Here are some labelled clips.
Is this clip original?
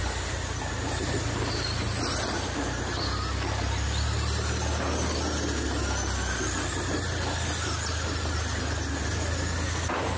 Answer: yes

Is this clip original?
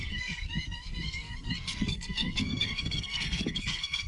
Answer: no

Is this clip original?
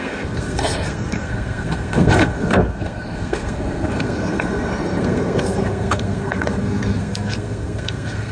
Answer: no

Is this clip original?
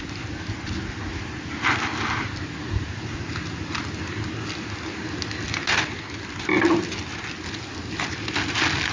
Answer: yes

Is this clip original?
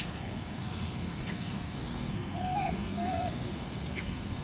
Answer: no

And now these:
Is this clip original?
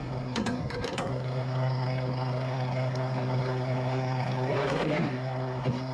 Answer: no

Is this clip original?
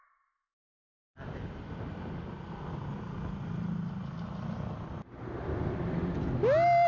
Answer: yes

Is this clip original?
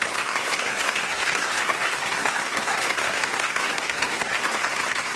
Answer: no